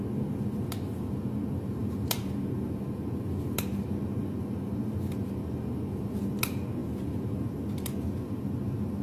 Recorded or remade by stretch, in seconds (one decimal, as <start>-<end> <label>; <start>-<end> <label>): 0.0-9.0 recorded